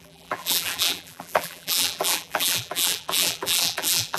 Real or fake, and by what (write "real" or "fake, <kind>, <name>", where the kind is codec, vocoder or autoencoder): fake, vocoder, BigVGAN v2